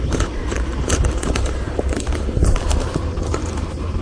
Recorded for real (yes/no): no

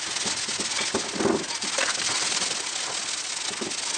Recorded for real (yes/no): yes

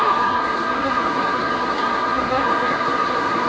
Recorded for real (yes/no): no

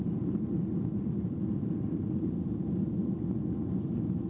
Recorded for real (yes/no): yes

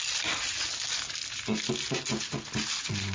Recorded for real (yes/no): yes